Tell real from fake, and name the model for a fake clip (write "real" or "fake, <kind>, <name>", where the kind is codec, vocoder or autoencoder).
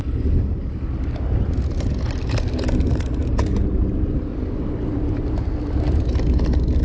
real